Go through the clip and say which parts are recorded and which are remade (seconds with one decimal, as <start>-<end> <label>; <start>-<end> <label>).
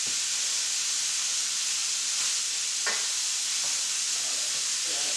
0.0-5.2 recorded